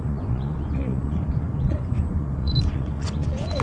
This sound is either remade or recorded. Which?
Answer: remade